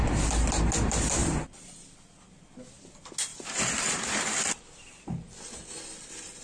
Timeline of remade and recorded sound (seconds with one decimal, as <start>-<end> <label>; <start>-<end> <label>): 0.0-6.4 recorded